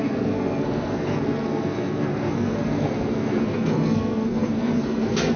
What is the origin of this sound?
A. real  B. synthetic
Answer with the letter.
B